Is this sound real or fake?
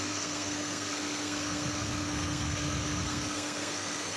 fake